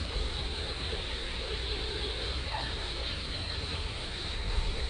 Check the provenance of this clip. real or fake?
fake